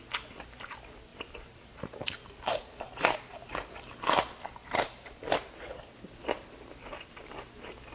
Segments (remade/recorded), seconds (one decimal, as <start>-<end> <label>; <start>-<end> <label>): 0.0-1.1 recorded; 1.1-3.7 remade; 3.7-4.6 recorded; 4.6-5.5 remade; 5.5-7.9 recorded